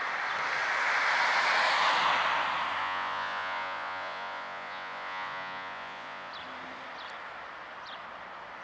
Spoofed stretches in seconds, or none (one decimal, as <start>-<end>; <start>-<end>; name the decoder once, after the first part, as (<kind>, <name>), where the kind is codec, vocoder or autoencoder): 2.8-6.3 (vocoder, Vocos)